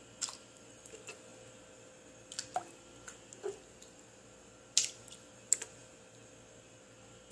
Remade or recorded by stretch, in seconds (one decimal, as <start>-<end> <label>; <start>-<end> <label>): 0.0-7.3 recorded